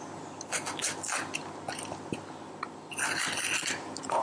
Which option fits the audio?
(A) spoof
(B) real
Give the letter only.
B